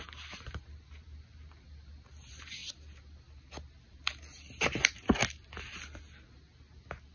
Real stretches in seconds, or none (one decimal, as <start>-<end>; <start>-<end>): 0.0-7.1